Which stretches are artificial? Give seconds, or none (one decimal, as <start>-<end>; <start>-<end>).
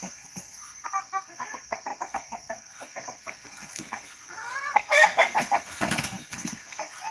0.0-7.1